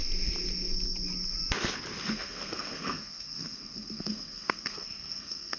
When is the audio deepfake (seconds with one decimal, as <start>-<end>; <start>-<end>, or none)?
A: 2.0-5.6